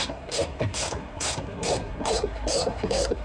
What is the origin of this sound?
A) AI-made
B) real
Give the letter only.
A